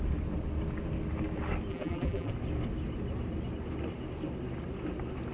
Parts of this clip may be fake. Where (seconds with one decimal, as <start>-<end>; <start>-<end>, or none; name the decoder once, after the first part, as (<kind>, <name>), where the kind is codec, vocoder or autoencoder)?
1.7-2.3 (vocoder, BigVGAN v2)